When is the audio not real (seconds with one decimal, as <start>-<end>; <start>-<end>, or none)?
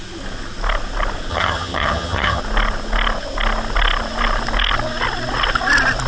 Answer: 1.3-2.4